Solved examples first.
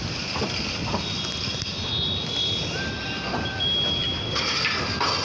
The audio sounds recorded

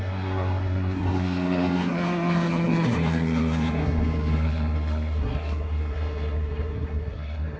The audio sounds remade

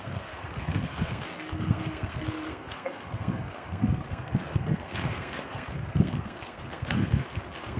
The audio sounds remade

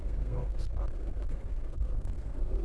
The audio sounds remade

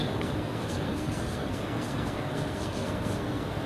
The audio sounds remade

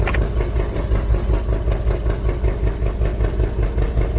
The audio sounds recorded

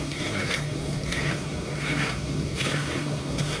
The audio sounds remade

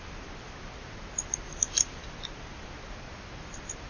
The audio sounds recorded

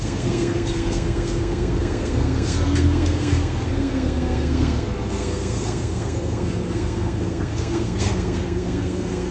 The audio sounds remade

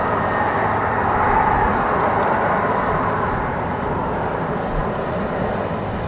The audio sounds recorded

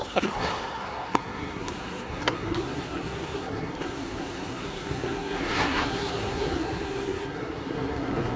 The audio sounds remade